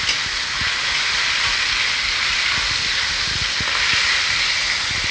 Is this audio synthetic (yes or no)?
no